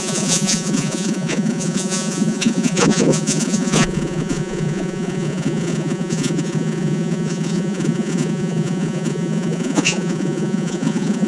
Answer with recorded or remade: remade